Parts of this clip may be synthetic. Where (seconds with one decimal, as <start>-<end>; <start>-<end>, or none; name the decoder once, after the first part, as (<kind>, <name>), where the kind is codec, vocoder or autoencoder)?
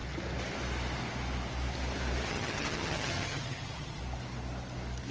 2.3-4.0 (vocoder, HiFi-GAN)